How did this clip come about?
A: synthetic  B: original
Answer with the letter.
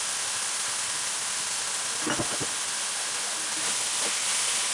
B